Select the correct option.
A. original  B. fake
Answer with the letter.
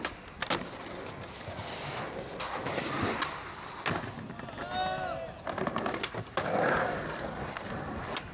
A